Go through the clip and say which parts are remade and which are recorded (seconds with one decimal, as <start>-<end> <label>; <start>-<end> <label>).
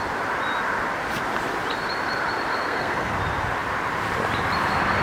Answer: 0.0-2.5 recorded; 2.5-3.1 remade; 3.1-5.0 recorded